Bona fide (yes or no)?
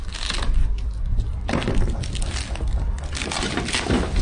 yes